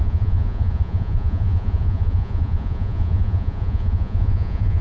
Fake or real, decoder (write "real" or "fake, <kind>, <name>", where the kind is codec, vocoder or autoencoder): fake, vocoder, Vocos